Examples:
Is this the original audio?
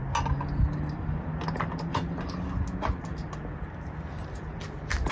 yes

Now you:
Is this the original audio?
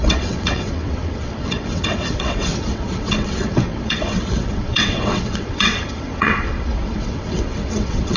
no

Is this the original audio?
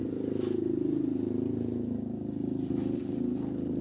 yes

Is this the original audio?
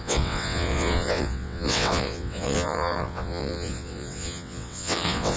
no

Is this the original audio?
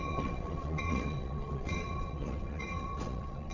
no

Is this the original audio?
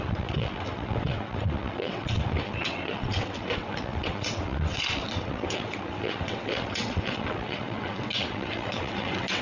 no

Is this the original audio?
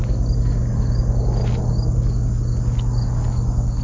yes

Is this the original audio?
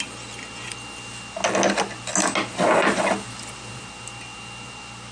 yes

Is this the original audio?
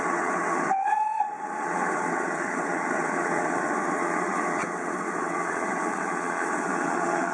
no